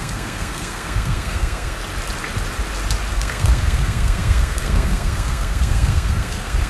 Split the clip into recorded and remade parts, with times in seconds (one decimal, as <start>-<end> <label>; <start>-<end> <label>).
0.0-1.8 remade; 1.8-3.1 recorded; 3.1-6.7 remade

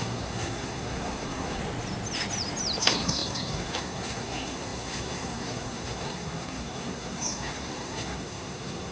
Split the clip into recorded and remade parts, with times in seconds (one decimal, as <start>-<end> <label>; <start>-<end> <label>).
0.0-1.6 remade; 1.6-2.8 recorded; 2.8-8.9 remade